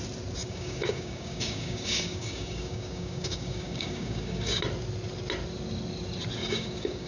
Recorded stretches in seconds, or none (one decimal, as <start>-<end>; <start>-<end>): 0.0-0.4; 4.6-6.4